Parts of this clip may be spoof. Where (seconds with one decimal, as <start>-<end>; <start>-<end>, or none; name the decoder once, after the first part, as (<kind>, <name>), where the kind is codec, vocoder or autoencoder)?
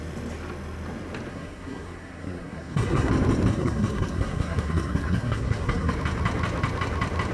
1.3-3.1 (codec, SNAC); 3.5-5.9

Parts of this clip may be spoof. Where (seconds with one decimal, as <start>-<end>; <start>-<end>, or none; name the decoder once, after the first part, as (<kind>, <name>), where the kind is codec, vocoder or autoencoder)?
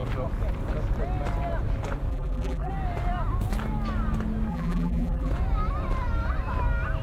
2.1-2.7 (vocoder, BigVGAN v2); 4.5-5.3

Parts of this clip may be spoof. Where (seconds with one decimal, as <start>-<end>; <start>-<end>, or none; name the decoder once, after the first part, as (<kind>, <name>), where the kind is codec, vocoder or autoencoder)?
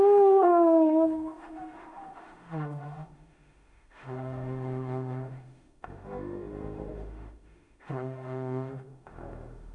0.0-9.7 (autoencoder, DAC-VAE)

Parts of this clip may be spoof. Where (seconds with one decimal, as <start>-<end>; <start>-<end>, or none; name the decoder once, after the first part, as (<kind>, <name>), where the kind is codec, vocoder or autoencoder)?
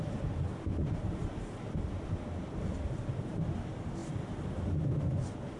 1.2-3.3 (vocoder, BigVGAN v2)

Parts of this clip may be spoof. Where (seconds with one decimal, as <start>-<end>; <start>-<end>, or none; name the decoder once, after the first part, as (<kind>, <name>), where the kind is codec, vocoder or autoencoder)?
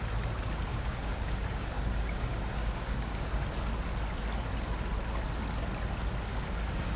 0.7-3.3 (codec, DAC); 6.3-7.0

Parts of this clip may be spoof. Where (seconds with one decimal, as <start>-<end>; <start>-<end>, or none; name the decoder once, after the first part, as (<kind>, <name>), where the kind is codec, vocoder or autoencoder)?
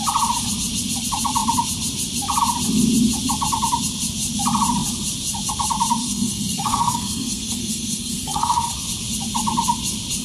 6.0-8.7 (codec, SNAC)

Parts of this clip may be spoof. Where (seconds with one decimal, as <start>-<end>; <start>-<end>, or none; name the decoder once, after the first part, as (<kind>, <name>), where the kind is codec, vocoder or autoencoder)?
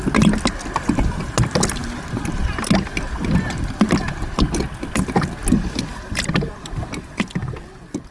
none